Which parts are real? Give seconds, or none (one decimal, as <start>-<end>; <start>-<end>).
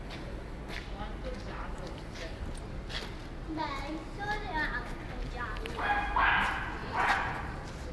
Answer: 0.0-6.8; 7.4-7.9